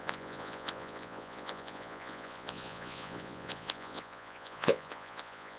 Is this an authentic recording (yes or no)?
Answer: no